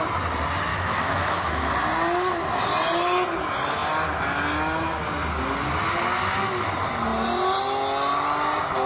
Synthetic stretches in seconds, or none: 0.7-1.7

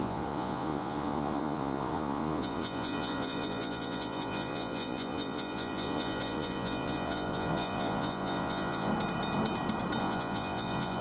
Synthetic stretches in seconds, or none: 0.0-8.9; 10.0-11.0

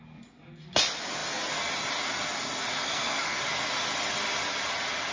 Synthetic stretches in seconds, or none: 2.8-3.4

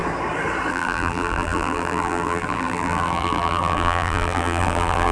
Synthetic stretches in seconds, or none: 0.7-5.1

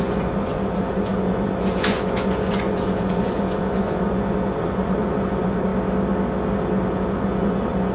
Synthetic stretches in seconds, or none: 0.0-5.7; 6.9-7.9

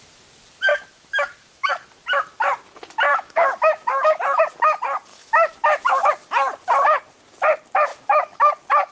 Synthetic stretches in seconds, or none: 0.7-1.7; 3.1-4.4; 5.1-6.1; 7.9-8.5

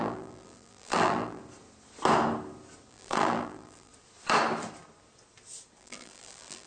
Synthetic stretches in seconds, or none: 0.0-1.4; 2.9-3.9; 5.8-6.7

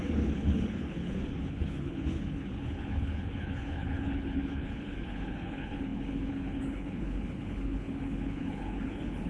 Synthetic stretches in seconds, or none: 0.0-9.3